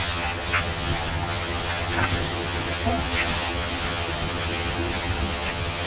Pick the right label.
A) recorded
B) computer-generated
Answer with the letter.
B